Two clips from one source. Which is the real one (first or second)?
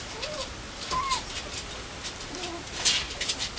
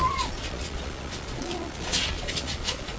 first